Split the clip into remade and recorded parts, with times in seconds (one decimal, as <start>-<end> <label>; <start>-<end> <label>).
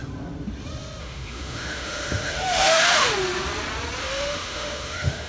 0.0-1.0 recorded; 1.0-3.1 remade; 3.1-4.0 recorded; 4.0-5.3 remade